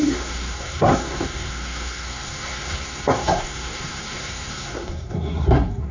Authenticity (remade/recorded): remade